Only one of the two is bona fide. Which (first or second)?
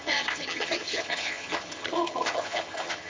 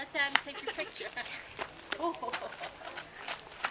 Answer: second